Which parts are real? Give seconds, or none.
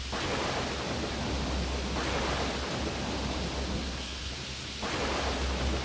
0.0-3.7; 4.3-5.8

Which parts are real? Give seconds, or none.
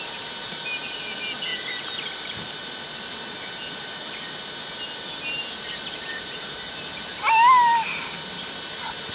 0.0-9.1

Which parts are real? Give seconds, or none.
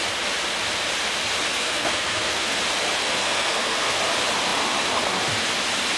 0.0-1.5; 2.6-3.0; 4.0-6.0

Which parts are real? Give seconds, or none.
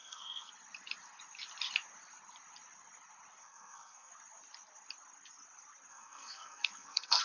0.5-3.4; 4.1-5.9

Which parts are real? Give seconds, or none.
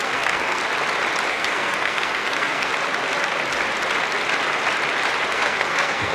0.6-1.3; 2.7-5.3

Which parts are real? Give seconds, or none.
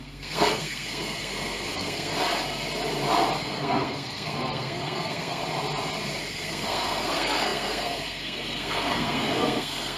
2.1-3.4; 5.4-6.3